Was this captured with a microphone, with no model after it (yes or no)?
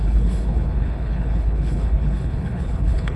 no